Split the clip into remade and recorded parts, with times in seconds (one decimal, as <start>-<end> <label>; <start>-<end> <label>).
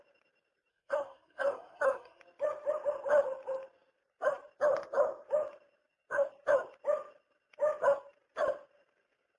0.0-0.7 recorded; 0.7-2.2 remade; 2.2-9.4 recorded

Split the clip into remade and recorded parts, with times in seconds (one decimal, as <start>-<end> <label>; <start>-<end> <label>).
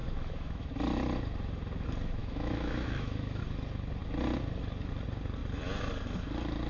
0.0-0.7 remade; 0.7-2.2 recorded; 2.2-3.4 remade; 3.4-6.7 recorded